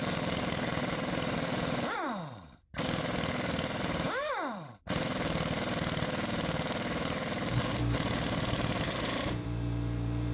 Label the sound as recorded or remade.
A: remade